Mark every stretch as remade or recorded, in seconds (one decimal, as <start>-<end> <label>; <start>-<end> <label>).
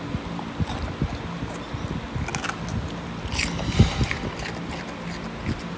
0.0-5.8 recorded